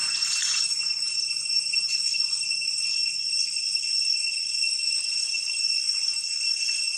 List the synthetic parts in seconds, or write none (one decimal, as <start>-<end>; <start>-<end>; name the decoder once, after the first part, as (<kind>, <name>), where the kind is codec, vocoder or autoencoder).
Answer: 0.0-1.9 (vocoder, BigVGAN v2)